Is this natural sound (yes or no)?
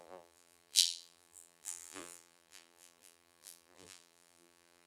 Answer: no